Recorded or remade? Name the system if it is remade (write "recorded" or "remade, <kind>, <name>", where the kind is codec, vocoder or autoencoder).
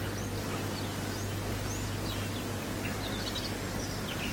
recorded